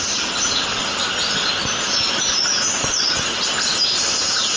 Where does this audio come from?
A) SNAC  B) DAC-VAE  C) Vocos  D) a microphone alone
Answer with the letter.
D